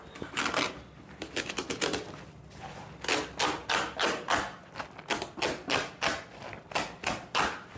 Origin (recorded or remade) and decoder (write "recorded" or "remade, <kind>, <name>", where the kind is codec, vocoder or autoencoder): recorded